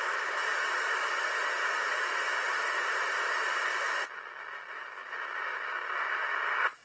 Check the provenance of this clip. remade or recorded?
recorded